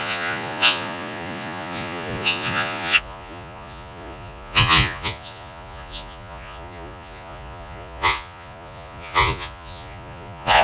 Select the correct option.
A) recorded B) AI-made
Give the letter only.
B